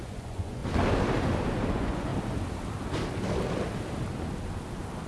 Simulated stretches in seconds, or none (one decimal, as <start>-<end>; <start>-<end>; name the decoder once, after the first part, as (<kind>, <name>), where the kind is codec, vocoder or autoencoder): 0.0-0.6 (vocoder, Vocos); 1.7-2.1